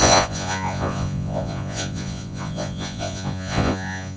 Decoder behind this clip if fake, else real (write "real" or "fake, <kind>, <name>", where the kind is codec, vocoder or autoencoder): fake, vocoder, Vocos